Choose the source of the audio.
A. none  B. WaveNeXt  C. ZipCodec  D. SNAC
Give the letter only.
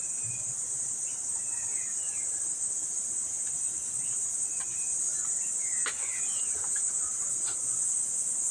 A